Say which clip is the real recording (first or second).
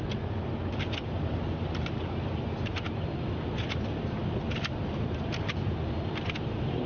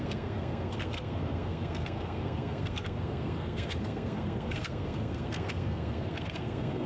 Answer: first